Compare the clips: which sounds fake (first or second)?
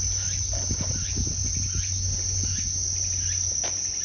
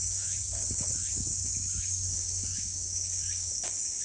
second